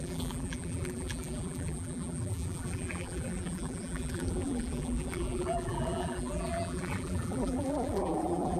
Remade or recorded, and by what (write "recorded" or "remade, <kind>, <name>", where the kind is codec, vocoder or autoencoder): remade, vocoder, BigVGAN v2